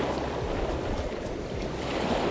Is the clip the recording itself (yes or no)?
no